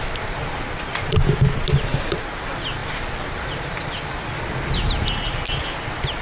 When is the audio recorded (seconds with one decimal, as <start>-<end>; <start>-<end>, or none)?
0.0-1.9; 2.4-2.8; 4.0-6.2